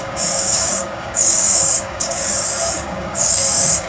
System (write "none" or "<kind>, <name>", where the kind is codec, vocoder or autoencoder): codec, DAC